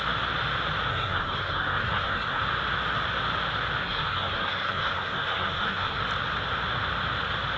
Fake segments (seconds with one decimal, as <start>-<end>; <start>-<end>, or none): 0.9-2.4; 3.8-6.0